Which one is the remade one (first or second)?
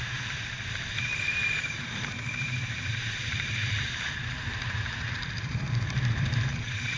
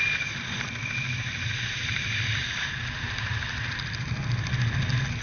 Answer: first